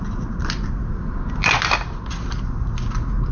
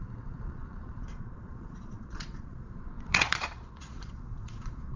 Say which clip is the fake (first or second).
second